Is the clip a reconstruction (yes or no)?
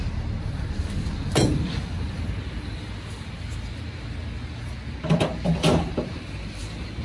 no